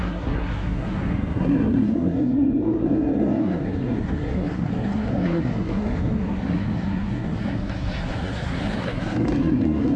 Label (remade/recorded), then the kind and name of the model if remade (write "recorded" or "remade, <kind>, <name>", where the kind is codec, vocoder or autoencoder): remade, codec, SNAC